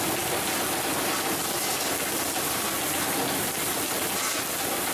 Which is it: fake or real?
real